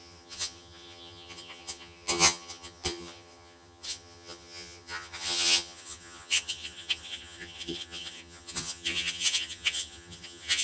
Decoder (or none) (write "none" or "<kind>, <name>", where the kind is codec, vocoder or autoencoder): vocoder, HiFi-GAN